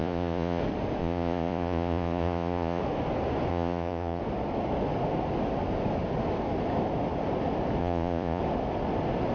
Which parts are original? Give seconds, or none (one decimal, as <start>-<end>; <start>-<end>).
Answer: 0.6-1.0; 2.8-3.5; 4.2-7.8; 8.4-9.3